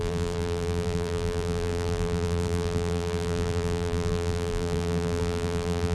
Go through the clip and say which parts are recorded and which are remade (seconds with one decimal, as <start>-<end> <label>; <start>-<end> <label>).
0.0-5.9 remade